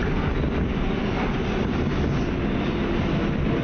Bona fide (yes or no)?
yes